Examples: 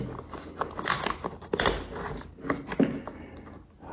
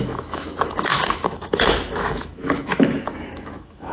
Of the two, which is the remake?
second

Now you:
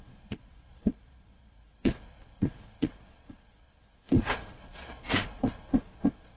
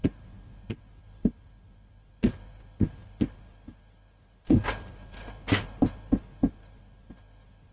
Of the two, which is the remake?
first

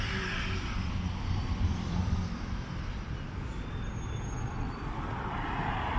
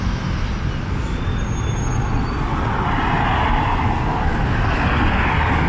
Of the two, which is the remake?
first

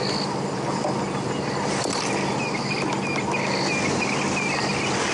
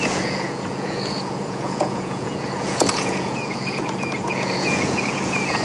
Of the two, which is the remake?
second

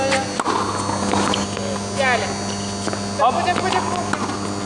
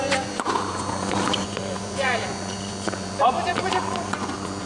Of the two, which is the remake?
second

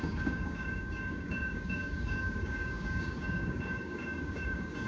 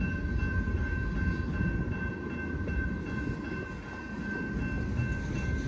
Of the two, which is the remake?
first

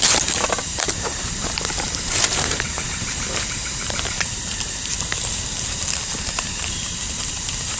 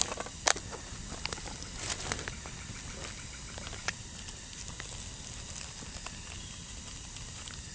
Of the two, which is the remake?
first